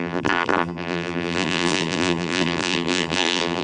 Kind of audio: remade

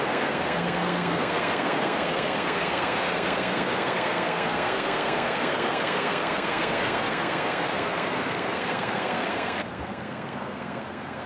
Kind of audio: remade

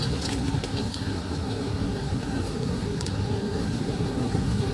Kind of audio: remade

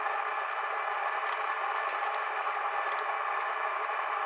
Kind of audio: recorded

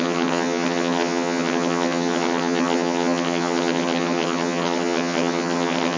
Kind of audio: remade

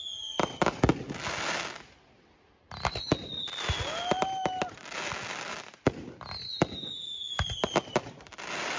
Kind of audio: recorded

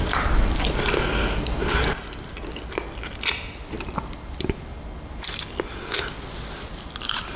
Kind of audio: recorded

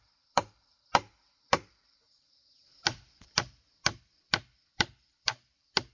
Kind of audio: remade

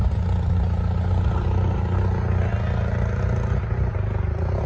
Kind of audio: recorded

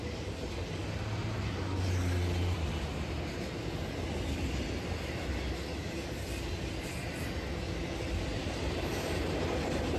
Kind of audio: recorded